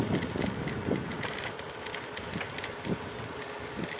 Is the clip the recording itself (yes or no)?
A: yes